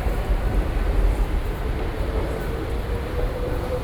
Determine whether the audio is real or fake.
fake